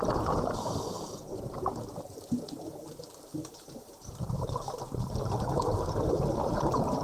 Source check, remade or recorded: remade